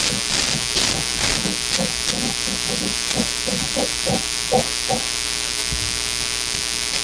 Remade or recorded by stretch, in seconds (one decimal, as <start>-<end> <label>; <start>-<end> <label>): 0.0-7.0 recorded